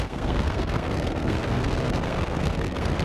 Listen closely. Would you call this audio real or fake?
fake